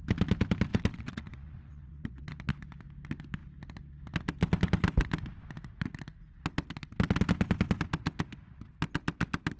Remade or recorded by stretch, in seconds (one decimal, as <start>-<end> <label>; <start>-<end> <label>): 0.0-0.7 recorded; 0.7-2.3 remade; 2.3-9.6 recorded